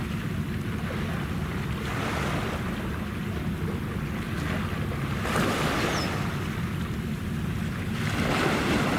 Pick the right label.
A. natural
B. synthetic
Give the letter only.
A